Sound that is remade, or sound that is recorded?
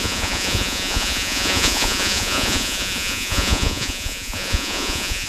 remade